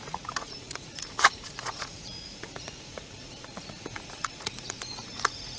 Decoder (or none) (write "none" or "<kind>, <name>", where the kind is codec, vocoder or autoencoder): vocoder, Vocos